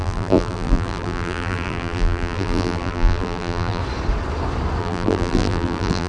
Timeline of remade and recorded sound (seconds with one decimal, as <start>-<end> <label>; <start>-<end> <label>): 0.0-3.8 remade; 3.8-4.8 recorded; 4.8-6.1 remade